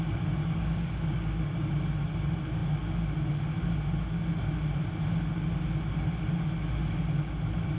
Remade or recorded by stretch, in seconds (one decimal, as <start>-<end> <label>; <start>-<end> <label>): 0.0-0.4 recorded; 0.4-1.7 remade; 1.7-7.8 recorded